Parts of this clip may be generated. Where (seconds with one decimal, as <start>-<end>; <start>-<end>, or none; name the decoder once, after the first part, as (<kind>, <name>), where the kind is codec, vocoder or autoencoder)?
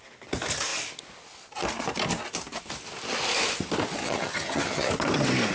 4.0-4.9 (vocoder, HiFi-GAN)